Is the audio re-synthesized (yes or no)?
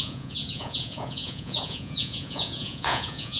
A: yes